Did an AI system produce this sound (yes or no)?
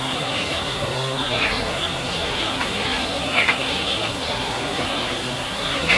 yes